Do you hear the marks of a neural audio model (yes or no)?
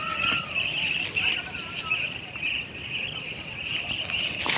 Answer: no